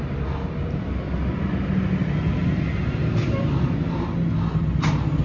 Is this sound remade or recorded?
recorded